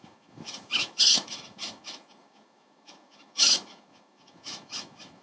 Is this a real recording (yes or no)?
no